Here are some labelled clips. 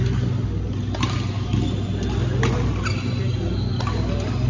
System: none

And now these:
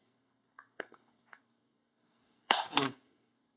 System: codec, SNAC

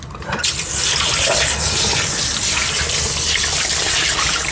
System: none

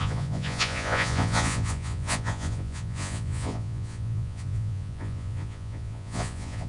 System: vocoder, Vocos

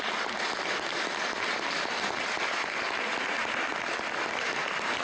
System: none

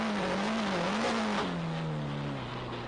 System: none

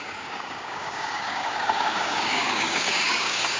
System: codec, DAC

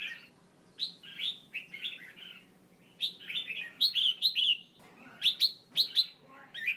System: none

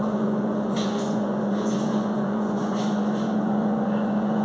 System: vocoder, Vocos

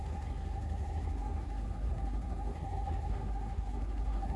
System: codec, SNAC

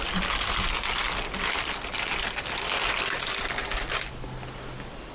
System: none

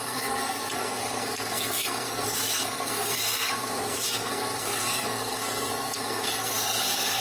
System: codec, SNAC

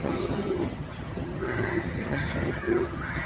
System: vocoder, HiFi-GAN